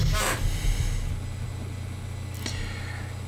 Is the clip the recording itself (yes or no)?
yes